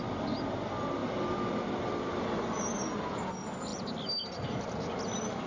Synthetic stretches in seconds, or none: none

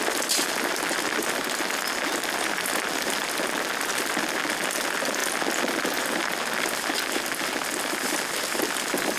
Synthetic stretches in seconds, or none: none

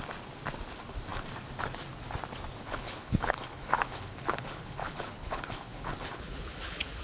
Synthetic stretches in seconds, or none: 2.6-7.0 (codec, HILCodec)

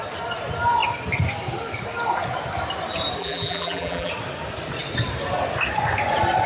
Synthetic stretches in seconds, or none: 3.2-4.1 (vocoder, BigVGAN v2)

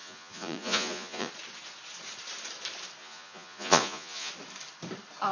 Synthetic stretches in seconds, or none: 0.0-1.3 (vocoder, Vocos); 3.0-4.3

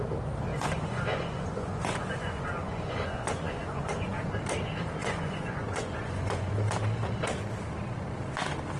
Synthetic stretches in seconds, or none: 0.5-4.3 (vocoder, Vocos); 5.0-6.5